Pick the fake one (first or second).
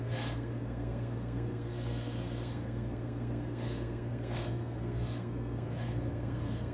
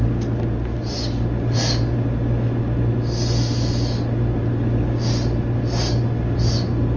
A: first